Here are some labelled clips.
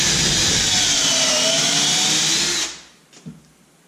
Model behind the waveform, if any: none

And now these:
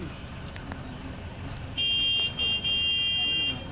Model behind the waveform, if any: none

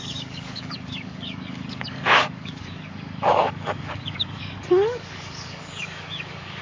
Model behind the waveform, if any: codec, DAC